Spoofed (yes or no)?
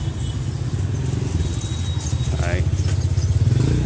no